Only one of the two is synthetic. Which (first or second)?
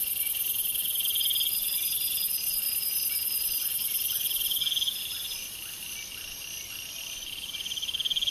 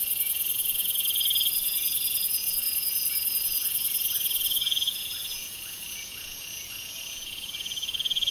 second